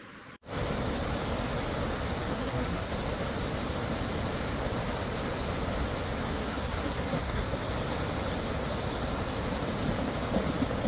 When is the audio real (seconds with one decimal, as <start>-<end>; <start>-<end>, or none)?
0.0-2.3; 2.9-6.2; 7.7-10.9